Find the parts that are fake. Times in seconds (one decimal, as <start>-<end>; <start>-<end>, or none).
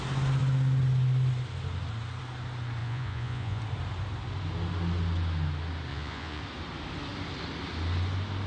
2.8-3.6; 5.9-6.4